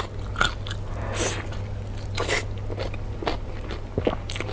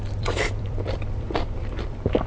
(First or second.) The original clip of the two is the first